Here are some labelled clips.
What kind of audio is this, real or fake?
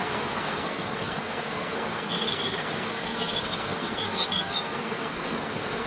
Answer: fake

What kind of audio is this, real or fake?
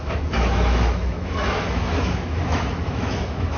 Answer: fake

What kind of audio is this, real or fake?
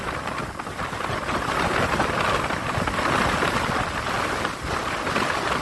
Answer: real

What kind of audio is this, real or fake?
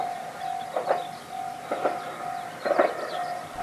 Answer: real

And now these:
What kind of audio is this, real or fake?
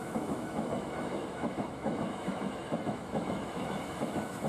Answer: fake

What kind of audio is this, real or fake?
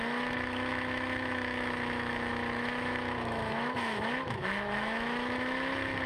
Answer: fake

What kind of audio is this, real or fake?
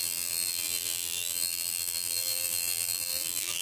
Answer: fake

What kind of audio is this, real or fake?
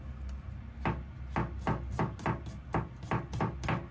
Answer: real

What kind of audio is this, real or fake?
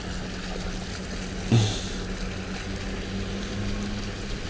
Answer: real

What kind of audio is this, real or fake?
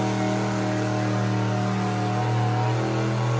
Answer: real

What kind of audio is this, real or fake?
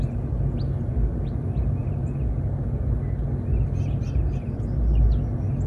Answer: real